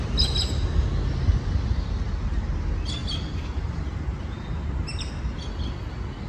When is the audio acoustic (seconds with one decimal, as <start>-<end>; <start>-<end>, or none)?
0.0-3.0; 5.1-6.3